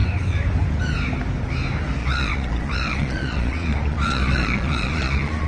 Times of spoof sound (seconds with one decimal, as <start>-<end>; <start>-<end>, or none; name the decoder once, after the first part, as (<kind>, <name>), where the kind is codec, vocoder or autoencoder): 2.0-5.5 (vocoder, Vocos)

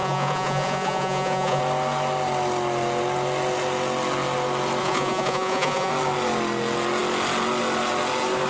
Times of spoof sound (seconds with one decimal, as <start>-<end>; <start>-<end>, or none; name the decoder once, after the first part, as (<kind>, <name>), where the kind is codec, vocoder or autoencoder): 0.0-1.6 (vocoder, Vocos); 4.8-5.9

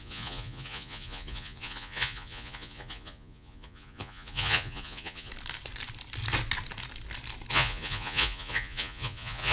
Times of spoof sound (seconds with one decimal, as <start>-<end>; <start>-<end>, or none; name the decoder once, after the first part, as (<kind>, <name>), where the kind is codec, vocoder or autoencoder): 0.0-5.3 (vocoder, Vocos); 7.5-9.5

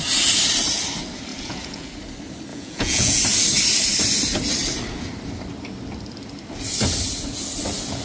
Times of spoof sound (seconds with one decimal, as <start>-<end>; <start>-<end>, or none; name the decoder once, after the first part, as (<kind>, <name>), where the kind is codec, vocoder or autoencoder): 1.3-1.9 (vocoder, Vocos); 2.5-3.2

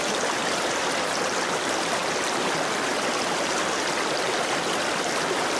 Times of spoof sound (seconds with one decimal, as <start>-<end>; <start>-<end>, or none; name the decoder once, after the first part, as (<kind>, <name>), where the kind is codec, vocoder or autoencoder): none